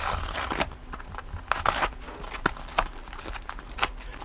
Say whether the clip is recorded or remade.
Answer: recorded